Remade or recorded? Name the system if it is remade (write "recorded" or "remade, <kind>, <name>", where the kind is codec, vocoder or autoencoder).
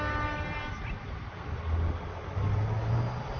recorded